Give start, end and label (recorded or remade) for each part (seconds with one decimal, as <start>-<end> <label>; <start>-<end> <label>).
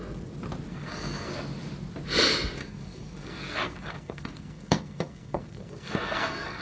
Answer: 0.0-0.7 recorded; 0.7-1.3 remade; 1.3-2.6 recorded; 2.6-6.6 remade